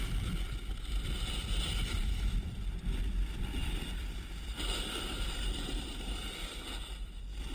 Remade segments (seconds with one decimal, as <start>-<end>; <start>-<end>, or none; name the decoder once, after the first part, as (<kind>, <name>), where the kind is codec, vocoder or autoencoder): 2.0-2.5 (vocoder, BigVGAN v2); 3.6-6.6